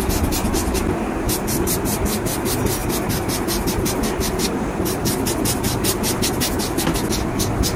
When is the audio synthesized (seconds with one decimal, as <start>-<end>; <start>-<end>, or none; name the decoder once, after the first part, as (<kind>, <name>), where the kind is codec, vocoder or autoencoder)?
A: 2.8-6.2 (vocoder, BigVGAN v2)